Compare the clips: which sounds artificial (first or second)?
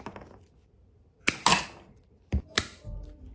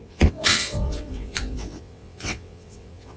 second